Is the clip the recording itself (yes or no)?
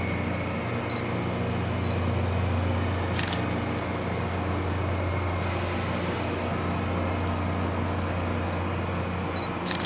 yes